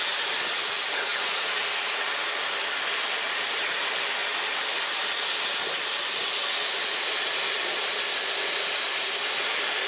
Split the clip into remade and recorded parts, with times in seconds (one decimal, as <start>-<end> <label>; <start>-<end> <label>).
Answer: 0.0-9.9 recorded